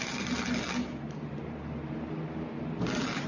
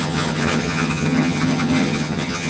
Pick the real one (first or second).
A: first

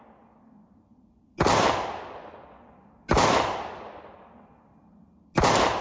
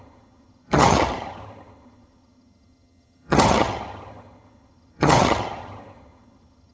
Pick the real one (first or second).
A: first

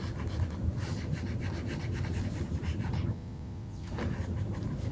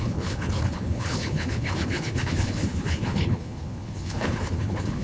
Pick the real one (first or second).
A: first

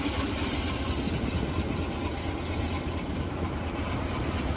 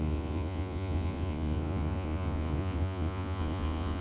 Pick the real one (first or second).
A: first